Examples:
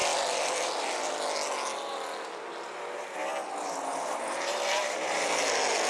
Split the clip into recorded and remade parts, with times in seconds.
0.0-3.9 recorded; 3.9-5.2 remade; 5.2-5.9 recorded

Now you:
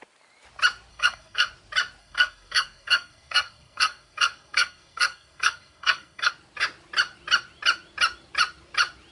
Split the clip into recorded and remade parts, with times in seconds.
0.0-0.9 recorded; 0.9-1.5 remade; 1.5-2.0 recorded; 2.0-6.3 remade; 6.3-9.1 recorded

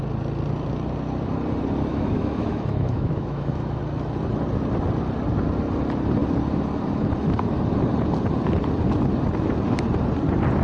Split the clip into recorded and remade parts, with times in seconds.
0.0-1.9 recorded; 1.9-3.8 remade; 3.8-10.6 recorded

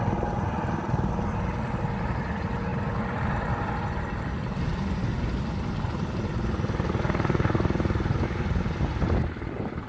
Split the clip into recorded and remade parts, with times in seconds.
0.0-9.9 recorded

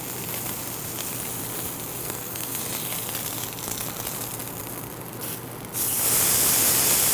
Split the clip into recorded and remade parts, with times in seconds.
0.0-2.0 recorded; 2.0-2.6 remade; 2.6-7.1 recorded